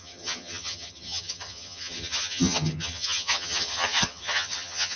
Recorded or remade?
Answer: remade